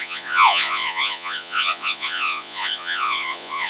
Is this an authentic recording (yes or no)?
no